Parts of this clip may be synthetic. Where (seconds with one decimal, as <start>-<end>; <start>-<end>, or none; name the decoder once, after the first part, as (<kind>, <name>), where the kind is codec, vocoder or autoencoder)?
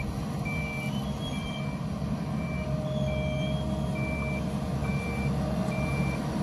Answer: 4.8-6.4 (vocoder, BigVGAN v2)